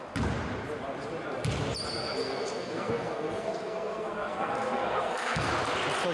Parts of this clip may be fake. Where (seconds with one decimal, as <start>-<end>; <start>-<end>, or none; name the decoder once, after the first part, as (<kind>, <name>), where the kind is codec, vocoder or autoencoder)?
2.2-5.5 (codec, SNAC)